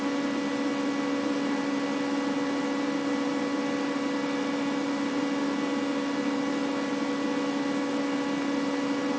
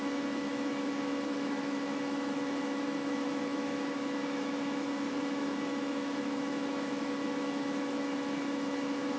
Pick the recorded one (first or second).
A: first